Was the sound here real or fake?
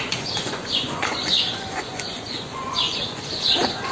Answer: fake